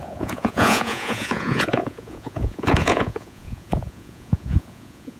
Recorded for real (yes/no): no